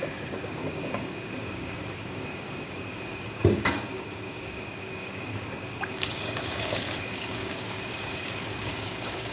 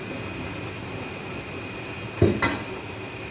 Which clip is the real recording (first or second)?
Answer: second